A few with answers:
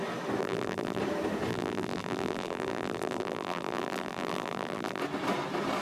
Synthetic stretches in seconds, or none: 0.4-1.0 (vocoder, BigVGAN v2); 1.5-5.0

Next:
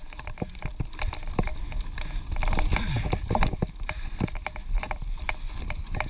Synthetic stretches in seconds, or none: 0.0-0.7 (vocoder, BigVGAN v2); 1.5-5.2

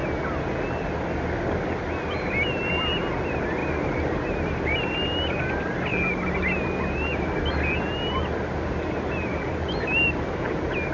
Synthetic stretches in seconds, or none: none